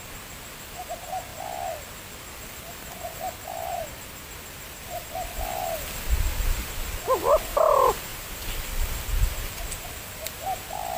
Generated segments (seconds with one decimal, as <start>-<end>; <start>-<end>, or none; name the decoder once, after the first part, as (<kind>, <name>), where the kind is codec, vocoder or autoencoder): none